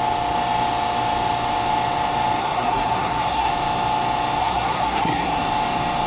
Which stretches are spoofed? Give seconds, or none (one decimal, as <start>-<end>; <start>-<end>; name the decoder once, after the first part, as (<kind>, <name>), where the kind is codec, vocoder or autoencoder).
2.4-3.5 (codec, SNAC); 4.4-5.4